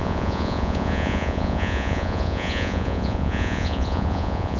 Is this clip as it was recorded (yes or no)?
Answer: no